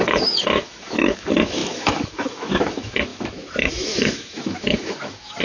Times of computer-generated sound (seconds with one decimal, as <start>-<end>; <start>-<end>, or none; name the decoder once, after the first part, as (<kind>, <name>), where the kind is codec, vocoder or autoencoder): 0.0-5.4 (autoencoder, DAC-VAE)

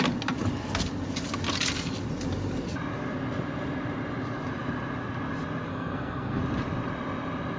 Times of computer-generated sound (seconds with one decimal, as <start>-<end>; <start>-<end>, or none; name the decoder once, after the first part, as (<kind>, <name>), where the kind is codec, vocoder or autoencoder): 5.7-6.4 (codec, SNAC)

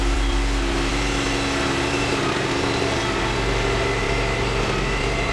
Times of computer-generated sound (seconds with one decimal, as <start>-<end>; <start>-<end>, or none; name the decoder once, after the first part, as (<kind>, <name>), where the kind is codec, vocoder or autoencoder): none